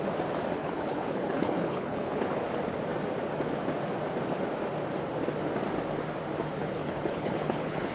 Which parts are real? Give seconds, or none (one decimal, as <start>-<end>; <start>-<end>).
0.0-0.6; 2.4-6.6